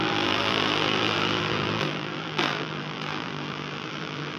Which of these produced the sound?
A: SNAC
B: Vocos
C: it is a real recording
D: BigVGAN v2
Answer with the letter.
D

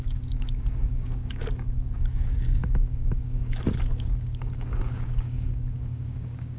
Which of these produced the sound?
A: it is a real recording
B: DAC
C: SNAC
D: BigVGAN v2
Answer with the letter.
B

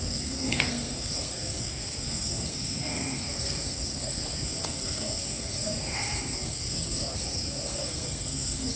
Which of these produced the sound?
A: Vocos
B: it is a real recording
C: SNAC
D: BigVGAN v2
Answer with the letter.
C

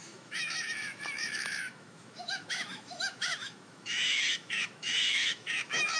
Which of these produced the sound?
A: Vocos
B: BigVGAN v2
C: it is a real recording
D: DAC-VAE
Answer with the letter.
D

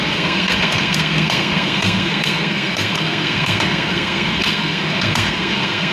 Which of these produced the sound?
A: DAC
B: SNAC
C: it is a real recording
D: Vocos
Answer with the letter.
B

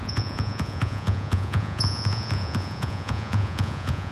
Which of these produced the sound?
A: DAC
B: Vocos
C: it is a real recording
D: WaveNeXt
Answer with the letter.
B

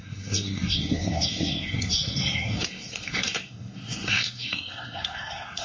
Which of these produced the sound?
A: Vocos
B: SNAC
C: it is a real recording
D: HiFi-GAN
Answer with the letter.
B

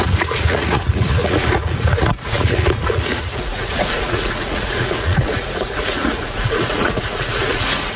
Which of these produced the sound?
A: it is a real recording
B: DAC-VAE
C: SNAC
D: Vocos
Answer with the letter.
D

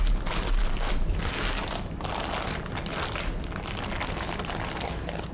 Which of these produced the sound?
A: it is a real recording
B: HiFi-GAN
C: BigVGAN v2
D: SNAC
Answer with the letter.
A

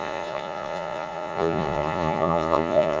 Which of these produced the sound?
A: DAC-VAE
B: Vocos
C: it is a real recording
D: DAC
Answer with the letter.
B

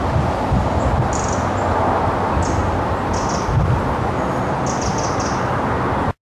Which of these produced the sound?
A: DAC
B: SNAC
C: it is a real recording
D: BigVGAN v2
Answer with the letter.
C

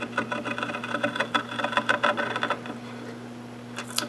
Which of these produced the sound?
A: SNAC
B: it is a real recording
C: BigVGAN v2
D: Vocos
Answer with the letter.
B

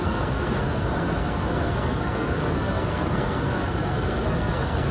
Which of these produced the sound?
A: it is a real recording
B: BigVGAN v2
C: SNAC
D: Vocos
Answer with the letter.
C